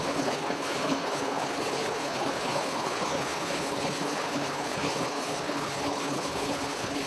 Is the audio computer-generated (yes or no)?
yes